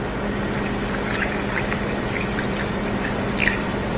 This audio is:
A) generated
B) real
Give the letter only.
A